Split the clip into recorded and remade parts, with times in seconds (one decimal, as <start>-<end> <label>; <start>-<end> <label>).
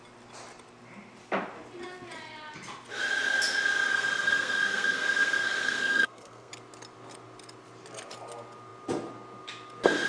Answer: 0.0-3.9 recorded; 3.9-6.5 remade; 6.5-10.1 recorded